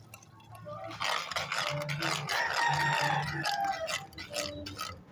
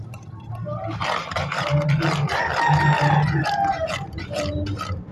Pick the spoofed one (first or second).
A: second